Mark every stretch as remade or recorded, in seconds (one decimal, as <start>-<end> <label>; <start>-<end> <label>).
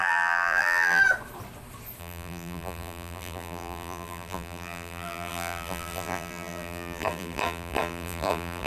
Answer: 0.0-1.0 remade; 1.0-2.0 recorded; 2.0-8.7 remade